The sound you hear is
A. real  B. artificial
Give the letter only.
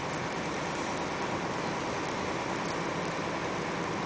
A